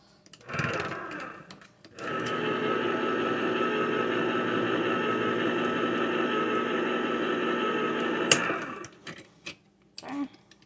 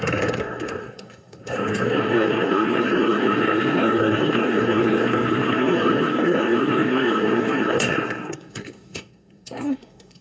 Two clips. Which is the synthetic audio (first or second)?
second